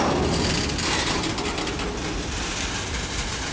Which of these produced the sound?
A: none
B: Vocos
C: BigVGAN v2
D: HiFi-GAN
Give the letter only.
A